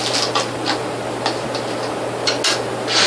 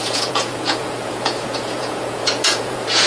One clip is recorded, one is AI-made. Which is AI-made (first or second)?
second